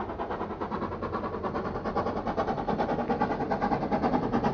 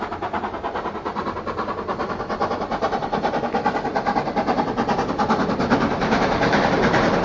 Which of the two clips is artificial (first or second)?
second